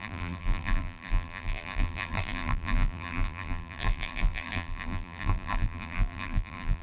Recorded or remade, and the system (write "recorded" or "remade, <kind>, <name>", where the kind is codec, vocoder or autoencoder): remade, vocoder, BigVGAN v2